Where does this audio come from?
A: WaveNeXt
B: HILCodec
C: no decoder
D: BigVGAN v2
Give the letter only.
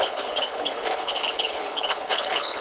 B